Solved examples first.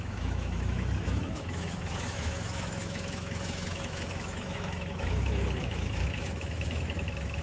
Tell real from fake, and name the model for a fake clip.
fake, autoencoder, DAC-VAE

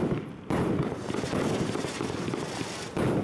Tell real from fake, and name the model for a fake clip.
real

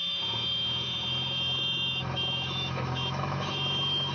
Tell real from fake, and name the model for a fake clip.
fake, autoencoder, DAC-VAE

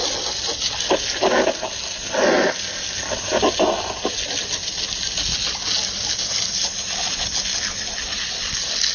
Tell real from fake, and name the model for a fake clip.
real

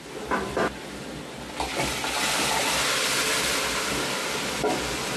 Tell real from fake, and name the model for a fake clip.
real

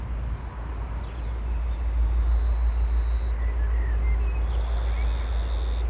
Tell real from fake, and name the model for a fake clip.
real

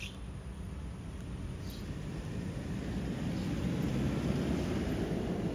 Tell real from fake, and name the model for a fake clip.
real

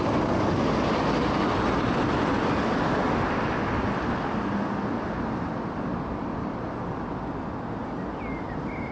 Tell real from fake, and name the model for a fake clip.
real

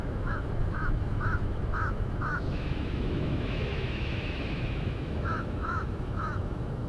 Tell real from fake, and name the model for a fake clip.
fake, autoencoder, DAC-VAE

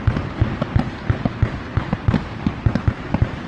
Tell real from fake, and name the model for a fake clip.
real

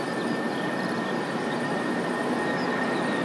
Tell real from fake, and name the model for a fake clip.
real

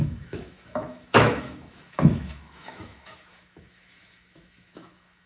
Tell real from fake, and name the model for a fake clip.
fake, autoencoder, DAC-VAE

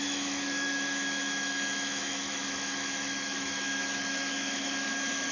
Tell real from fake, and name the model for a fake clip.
fake, autoencoder, DAC-VAE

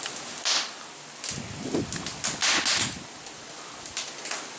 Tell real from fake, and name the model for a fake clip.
real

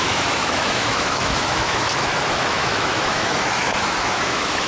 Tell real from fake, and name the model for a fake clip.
fake, autoencoder, DAC-VAE